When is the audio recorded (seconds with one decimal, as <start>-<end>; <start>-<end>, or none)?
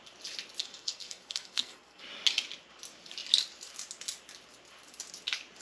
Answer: 0.0-0.6; 2.0-5.6